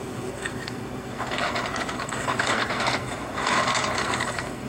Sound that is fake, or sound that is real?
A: fake